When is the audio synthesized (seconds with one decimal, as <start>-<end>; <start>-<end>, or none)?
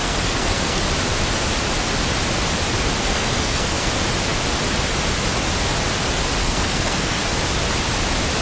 0.0-0.8; 3.0-3.9; 6.4-7.2